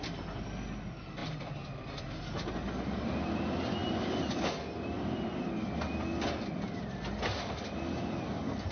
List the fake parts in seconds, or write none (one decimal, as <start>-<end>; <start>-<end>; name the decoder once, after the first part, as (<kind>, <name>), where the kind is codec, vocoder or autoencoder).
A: none